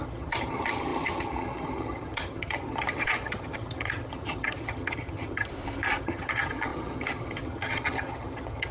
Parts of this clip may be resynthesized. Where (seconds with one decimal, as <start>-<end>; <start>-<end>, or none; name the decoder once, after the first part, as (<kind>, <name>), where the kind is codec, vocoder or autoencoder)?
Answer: 0.0-5.5 (vocoder, HiFi-GAN); 6.0-8.7